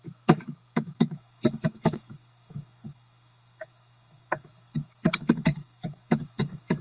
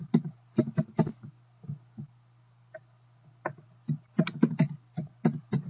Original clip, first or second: second